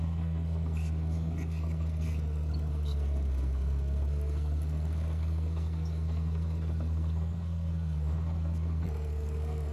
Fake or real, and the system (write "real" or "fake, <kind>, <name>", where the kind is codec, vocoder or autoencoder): fake, codec, SNAC